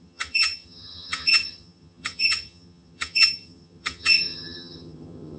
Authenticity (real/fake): fake